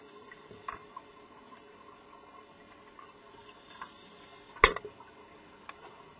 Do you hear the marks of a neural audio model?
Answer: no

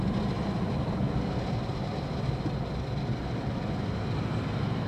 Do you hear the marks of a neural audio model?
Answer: no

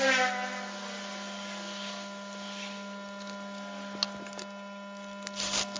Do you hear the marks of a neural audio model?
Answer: no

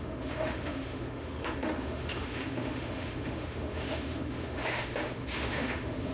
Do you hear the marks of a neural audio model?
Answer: yes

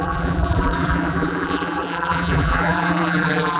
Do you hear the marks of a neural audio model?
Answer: yes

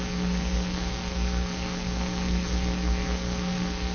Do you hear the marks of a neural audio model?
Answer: yes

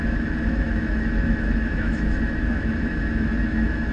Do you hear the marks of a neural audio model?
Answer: yes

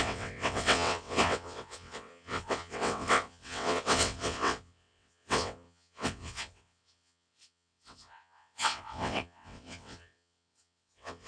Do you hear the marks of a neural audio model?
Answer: yes